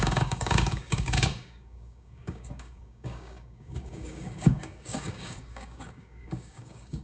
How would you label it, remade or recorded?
remade